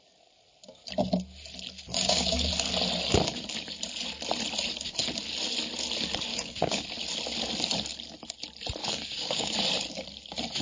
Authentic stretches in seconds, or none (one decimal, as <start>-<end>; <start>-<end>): 0.0-1.9; 2.5-6.3; 6.8-8.8; 9.5-10.6